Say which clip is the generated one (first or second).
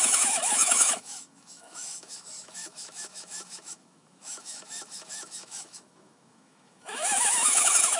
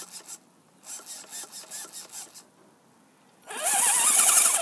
first